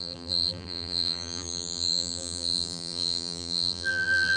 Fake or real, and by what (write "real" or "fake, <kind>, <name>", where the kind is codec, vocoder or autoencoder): fake, vocoder, BigVGAN v2